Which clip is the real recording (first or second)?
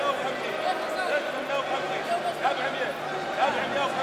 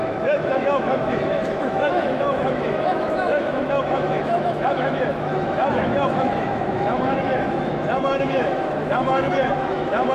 first